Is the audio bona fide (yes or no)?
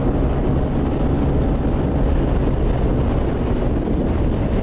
yes